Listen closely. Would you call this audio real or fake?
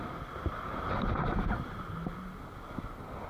real